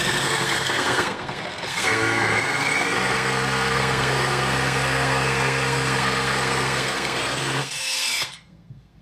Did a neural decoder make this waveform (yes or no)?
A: yes